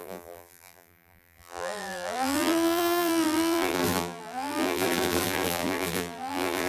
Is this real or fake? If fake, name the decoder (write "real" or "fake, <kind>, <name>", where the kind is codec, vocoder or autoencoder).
fake, vocoder, BigVGAN v2